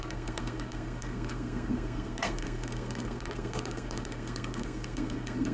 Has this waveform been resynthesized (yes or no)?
yes